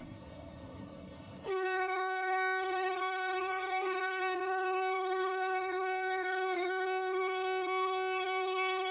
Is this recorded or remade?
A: remade